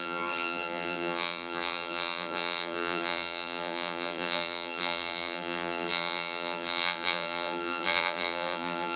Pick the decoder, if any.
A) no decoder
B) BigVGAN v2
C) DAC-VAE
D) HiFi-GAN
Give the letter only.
B